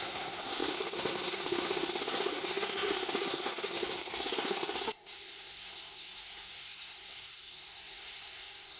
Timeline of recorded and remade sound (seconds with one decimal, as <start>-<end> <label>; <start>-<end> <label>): 0.0-8.8 remade